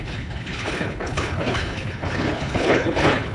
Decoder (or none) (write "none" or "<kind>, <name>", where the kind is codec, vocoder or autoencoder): codec, HILCodec